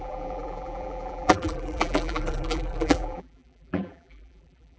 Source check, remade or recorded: remade